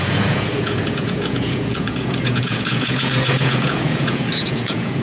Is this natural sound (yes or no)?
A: no